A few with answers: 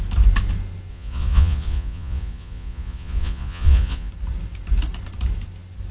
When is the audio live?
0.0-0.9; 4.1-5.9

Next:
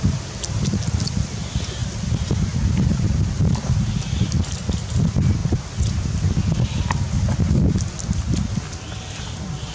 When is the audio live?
0.0-9.7